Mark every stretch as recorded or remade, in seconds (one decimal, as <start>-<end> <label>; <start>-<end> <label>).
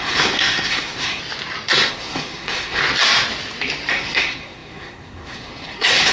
0.0-1.2 remade; 1.2-1.9 recorded; 1.9-2.8 remade; 2.8-3.9 recorded; 3.9-6.1 remade